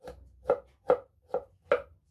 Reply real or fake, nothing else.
real